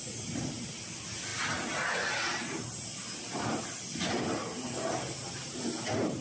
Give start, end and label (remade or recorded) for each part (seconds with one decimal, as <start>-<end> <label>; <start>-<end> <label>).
0.0-6.2 recorded